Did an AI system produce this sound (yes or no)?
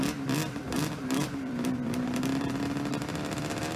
yes